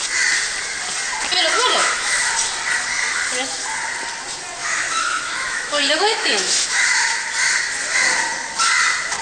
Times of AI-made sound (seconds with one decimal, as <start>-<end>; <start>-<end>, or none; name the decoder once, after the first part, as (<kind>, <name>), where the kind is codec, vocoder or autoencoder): 1.7-2.3 (autoencoder, DAC-VAE); 4.6-7.2